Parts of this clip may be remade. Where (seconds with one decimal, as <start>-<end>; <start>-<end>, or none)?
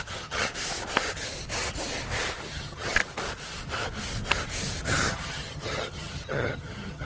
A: 0.0-0.5; 2.5-3.0; 4.8-7.0